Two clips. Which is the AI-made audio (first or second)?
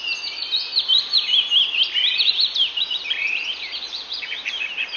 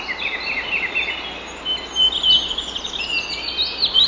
first